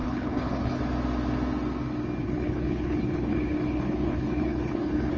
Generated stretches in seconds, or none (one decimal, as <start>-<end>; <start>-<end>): 0.0-0.8; 2.2-5.2